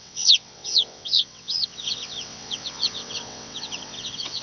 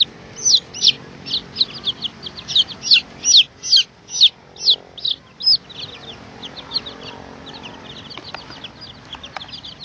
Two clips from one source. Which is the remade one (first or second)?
first